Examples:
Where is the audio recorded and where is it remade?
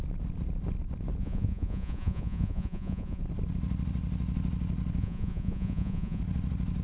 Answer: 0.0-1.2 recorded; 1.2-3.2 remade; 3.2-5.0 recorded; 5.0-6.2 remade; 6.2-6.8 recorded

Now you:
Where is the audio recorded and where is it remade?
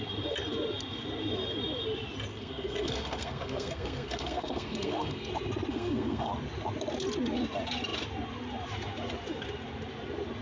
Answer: 0.0-2.3 recorded; 2.3-5.3 remade; 5.3-5.7 recorded; 5.7-6.3 remade; 6.3-10.4 recorded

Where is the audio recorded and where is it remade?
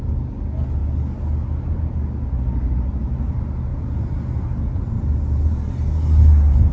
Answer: 0.0-6.7 recorded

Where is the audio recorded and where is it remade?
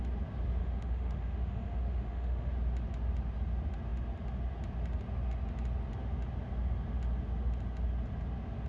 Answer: 0.0-0.6 recorded; 0.6-2.5 remade; 2.5-8.7 recorded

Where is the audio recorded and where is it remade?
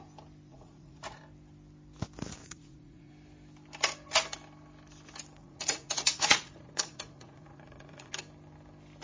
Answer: 0.0-0.5 recorded; 0.5-1.2 remade; 1.2-2.4 recorded; 2.4-3.1 remade; 3.1-5.4 recorded; 5.4-8.1 remade; 8.1-9.0 recorded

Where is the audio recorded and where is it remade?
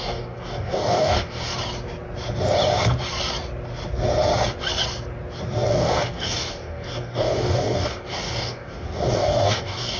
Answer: 0.0-1.5 remade; 1.5-5.7 recorded; 5.7-10.0 remade